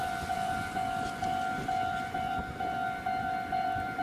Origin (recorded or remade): remade